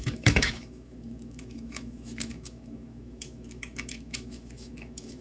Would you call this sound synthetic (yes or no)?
yes